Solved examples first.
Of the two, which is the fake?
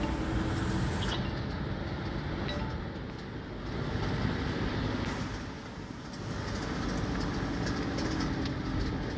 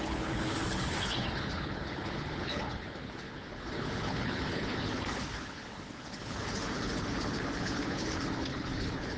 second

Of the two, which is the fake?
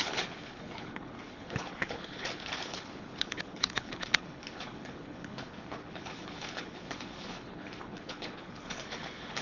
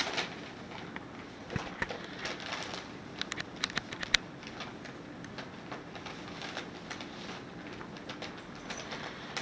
first